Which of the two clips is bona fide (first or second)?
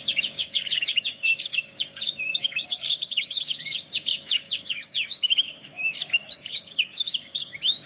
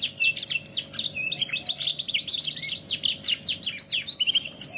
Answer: second